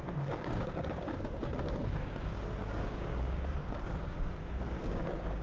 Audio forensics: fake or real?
fake